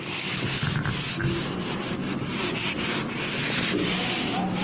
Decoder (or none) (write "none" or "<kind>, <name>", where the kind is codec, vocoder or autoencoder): none